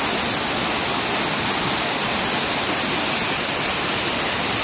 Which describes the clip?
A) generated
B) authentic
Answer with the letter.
B